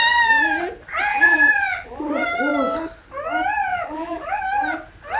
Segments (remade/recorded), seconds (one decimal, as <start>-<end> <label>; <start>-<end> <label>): 0.0-1.1 recorded; 1.1-2.1 remade; 2.1-3.7 recorded; 3.7-4.4 remade; 4.4-5.2 recorded